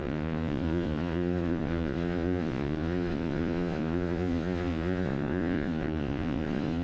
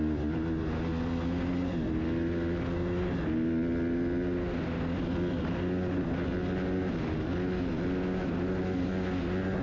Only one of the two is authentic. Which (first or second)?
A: second